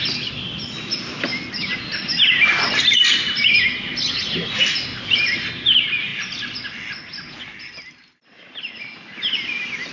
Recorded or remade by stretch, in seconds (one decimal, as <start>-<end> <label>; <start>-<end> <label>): 0.0-9.9 recorded